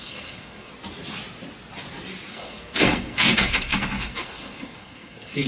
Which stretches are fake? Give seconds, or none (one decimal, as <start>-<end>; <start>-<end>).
0.0-0.7; 2.3-5.5